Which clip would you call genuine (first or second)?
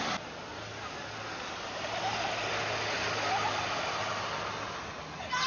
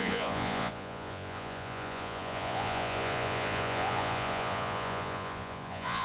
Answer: first